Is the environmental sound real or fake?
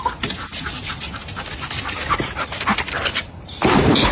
real